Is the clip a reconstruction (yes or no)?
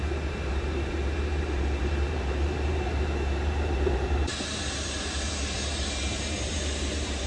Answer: yes